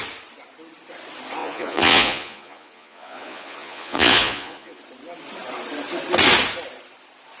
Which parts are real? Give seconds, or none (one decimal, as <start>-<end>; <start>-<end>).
0.0-1.4; 4.8-7.4

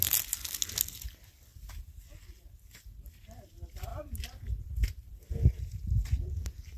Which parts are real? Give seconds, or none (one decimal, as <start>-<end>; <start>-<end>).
0.0-1.5; 3.5-3.9; 5.6-6.8